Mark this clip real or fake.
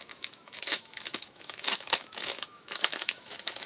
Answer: fake